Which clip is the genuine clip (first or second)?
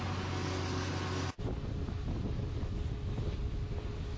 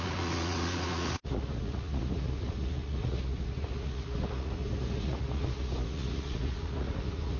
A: first